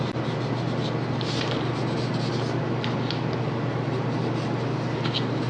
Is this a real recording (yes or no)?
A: yes